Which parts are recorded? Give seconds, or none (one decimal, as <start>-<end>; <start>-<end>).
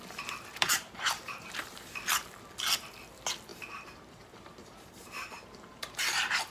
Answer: 0.0-0.5; 1.9-3.5